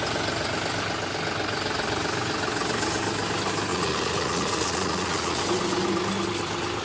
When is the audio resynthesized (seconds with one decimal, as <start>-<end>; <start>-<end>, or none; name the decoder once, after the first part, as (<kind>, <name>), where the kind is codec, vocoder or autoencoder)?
3.7-5.4 (vocoder, Vocos)